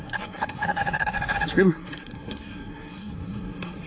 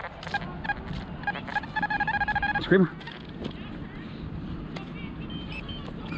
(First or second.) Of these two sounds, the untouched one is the second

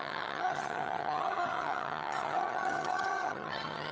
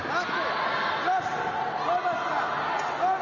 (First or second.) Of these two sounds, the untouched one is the second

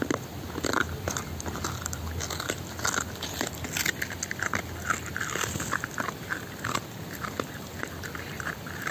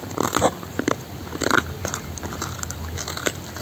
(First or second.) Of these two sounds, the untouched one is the first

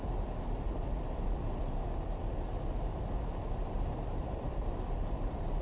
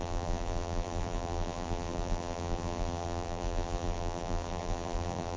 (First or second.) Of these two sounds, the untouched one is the first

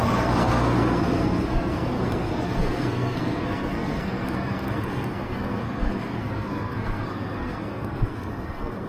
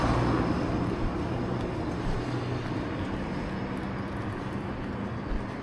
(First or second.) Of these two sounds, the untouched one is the second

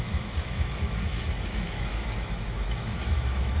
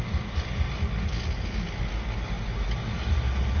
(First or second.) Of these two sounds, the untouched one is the second